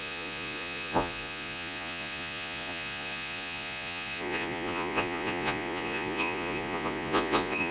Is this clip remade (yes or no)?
yes